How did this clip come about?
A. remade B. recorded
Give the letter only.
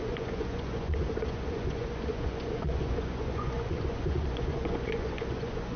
A